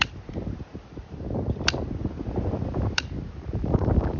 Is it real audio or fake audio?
real